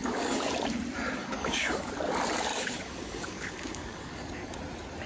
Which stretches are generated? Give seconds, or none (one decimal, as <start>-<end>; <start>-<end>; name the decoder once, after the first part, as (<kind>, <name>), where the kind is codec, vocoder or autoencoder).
0.0-0.5 (codec, DAC); 1.2-1.9; 2.5-4.5